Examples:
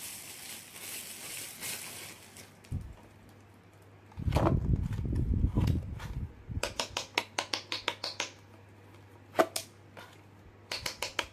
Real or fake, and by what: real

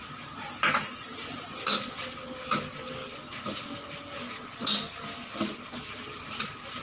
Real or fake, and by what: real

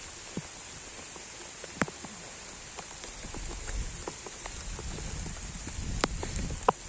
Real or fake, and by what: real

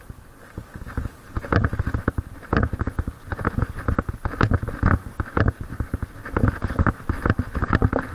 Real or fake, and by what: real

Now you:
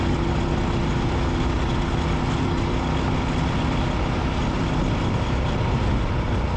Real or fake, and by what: real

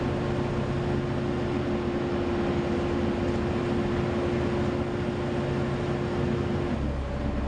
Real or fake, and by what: real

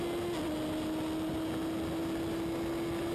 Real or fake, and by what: real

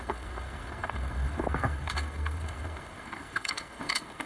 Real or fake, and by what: fake, codec, SNAC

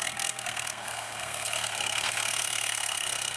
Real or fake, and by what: fake, codec, SNAC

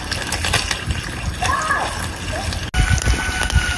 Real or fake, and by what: real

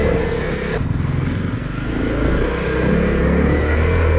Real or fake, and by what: fake, codec, SNAC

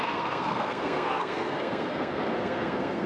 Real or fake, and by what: fake, codec, SNAC